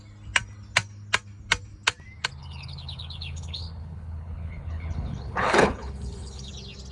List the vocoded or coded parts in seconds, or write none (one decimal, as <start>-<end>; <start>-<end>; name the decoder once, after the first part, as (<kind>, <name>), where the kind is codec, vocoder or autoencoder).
2.4-6.5 (codec, HILCodec)